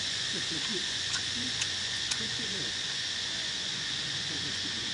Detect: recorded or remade remade